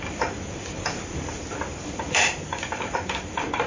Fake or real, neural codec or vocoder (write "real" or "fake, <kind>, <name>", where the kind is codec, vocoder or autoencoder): fake, vocoder, BigVGAN v2